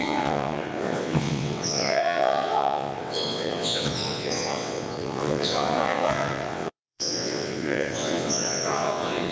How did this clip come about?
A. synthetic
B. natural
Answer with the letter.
A